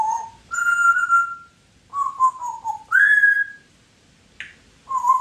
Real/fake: real